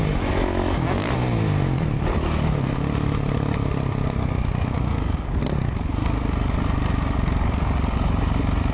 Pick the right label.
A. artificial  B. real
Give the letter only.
B